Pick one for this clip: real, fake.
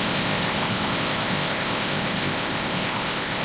fake